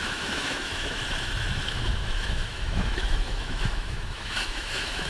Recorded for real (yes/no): no